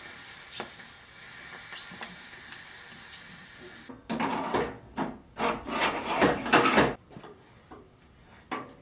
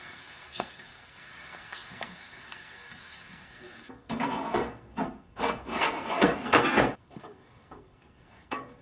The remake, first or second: second